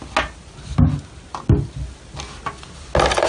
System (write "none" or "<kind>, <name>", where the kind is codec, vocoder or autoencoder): none